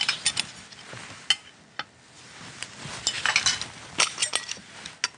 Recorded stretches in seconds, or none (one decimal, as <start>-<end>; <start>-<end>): 0.0-5.2